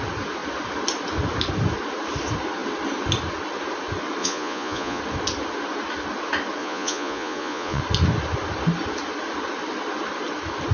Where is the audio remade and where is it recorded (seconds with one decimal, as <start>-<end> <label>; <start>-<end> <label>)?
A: 0.0-4.2 recorded; 4.2-5.0 remade; 5.0-6.6 recorded; 6.6-7.8 remade; 7.8-10.7 recorded